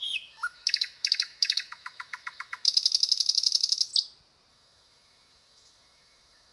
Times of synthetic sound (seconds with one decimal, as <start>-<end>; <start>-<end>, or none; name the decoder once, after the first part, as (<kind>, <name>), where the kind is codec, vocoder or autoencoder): 0.0-3.9 (autoencoder, DAC-VAE); 4.5-6.5